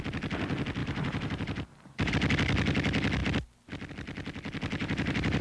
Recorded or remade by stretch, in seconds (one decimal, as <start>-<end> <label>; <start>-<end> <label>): 0.0-0.8 recorded; 0.8-2.1 remade; 2.1-4.8 recorded; 4.8-5.4 remade